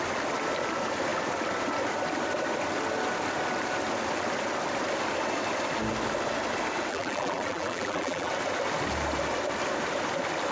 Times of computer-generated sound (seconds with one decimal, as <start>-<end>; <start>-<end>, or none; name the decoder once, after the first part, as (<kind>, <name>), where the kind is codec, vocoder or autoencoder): 6.9-8.3 (vocoder, BigVGAN v2)